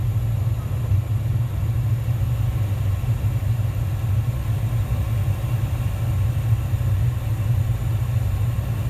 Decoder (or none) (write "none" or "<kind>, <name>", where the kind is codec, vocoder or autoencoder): none